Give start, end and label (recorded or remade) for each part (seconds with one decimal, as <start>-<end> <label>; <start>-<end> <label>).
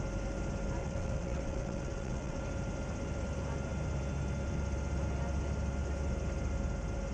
0.0-0.8 recorded; 0.8-2.4 remade; 2.4-7.1 recorded